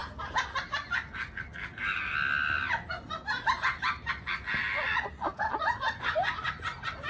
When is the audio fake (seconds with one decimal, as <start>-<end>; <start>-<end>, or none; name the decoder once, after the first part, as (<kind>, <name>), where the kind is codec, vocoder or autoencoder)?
none